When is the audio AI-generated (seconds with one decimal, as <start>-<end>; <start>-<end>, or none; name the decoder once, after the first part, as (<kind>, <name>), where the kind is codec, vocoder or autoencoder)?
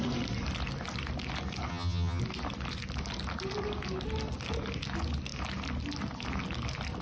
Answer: 1.7-2.2 (vocoder, HiFi-GAN)